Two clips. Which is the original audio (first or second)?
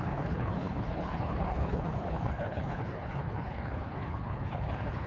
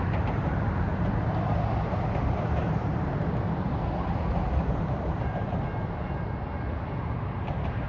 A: second